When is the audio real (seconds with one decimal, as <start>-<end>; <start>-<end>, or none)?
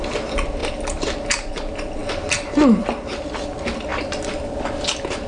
0.0-3.9; 4.8-5.3